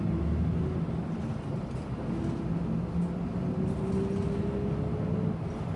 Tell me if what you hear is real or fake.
real